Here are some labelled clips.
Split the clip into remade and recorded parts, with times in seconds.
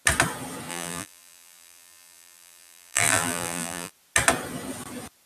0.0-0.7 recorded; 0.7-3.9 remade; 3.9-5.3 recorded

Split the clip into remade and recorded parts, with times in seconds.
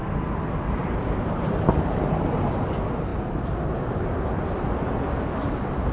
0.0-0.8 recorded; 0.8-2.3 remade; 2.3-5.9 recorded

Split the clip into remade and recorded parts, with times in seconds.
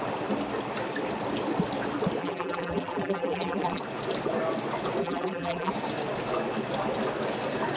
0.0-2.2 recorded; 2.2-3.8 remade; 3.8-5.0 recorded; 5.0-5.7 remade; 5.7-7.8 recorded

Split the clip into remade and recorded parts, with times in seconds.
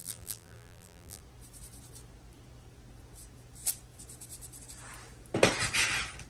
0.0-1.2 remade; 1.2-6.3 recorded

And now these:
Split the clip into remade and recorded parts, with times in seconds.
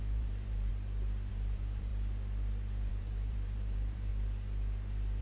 0.0-0.7 remade; 0.7-1.3 recorded; 1.3-1.9 remade; 1.9-2.9 recorded; 2.9-4.1 remade; 4.1-5.2 recorded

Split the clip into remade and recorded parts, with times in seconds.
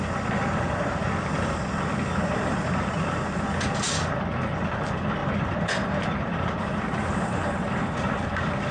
0.0-5.2 recorded; 5.2-8.0 remade; 8.0-8.7 recorded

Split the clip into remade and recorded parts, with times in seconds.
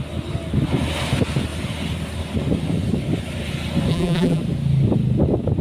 0.0-3.9 recorded; 3.9-4.4 remade; 4.4-5.6 recorded